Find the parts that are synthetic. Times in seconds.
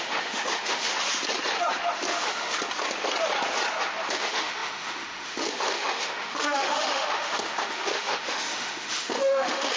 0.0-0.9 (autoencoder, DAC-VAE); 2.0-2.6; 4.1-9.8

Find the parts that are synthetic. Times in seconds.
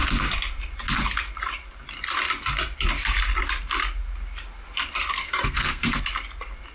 5.2-6.0 (codec, SNAC)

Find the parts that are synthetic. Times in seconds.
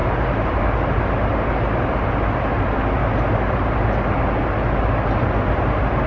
none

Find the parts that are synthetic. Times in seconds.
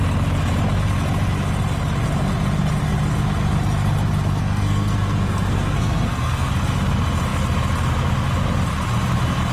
4.4-6.5 (codec, SNAC)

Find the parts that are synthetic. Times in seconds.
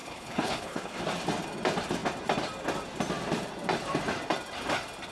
0.0-1.0 (codec, HILCodec)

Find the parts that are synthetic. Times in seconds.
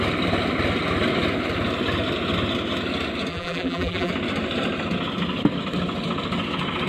3.3-4.1 (vocoder, BigVGAN v2)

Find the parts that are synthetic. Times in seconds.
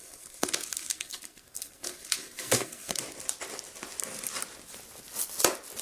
0.0-3.0 (codec, SNAC)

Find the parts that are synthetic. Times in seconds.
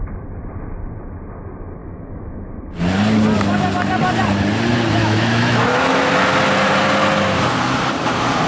1.8-2.3 (autoencoder, DAC-VAE); 5.0-6.1